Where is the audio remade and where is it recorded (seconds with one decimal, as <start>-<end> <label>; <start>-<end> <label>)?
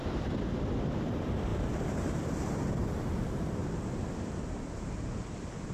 0.0-1.5 recorded; 1.5-4.4 remade; 4.4-5.7 recorded